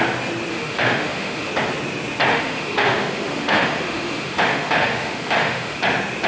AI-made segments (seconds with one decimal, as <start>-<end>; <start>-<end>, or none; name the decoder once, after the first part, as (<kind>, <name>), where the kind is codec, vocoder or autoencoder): 0.5-1.5 (autoencoder, DAC-VAE); 2.3-5.8